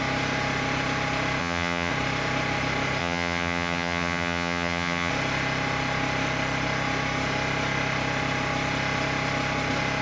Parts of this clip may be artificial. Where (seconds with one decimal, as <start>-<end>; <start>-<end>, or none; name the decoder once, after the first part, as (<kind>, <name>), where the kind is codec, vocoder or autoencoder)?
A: 1.4-1.9 (vocoder, HiFi-GAN); 3.0-5.1